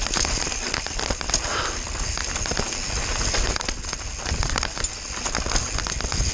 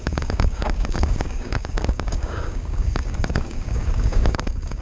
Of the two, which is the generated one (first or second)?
second